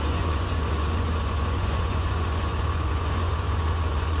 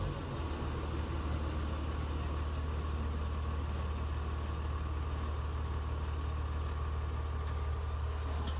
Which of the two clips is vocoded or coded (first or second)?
first